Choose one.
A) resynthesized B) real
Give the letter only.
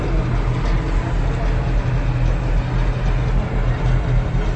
B